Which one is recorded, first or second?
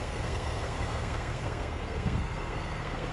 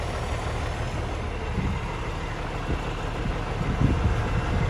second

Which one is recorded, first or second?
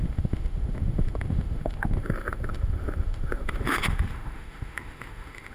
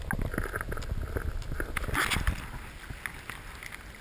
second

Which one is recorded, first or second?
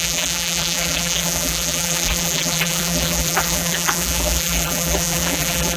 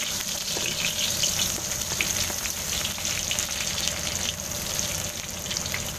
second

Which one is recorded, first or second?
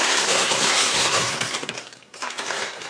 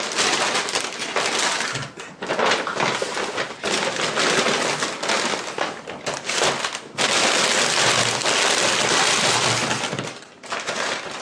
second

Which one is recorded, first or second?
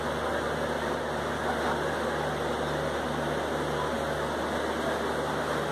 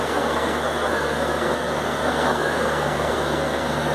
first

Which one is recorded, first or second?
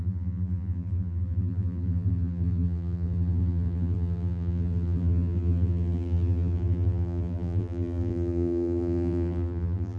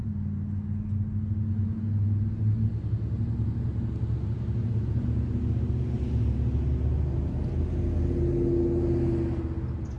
second